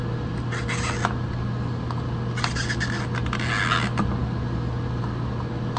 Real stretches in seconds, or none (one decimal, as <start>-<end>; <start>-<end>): 0.0-5.8